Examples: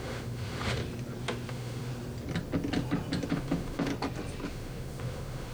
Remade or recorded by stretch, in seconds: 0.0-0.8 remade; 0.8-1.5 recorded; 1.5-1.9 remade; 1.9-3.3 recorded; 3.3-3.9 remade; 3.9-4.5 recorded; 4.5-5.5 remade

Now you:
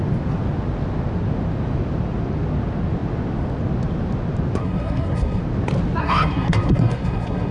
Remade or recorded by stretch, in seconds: 0.0-4.6 recorded; 4.6-5.4 remade; 5.4-6.0 recorded; 6.0-7.5 remade

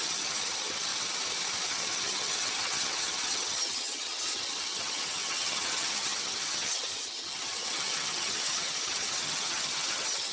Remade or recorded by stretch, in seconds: 0.0-0.9 remade; 0.9-1.7 recorded; 1.7-10.3 remade

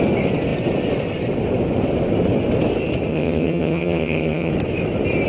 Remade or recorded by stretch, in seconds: 0.0-3.1 recorded; 3.1-4.5 remade; 4.5-5.3 recorded

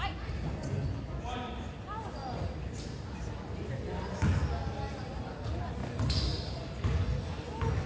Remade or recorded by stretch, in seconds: 0.0-5.8 recorded; 5.8-6.6 remade; 6.6-7.9 recorded